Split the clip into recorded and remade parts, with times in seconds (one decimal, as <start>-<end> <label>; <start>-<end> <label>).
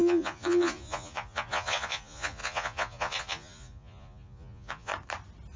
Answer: 0.0-4.9 remade; 4.9-5.6 recorded